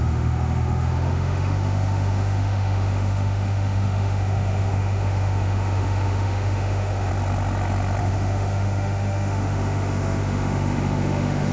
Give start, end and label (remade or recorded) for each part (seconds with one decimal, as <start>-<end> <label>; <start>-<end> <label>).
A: 0.0-7.1 remade; 7.1-8.0 recorded; 8.0-11.5 remade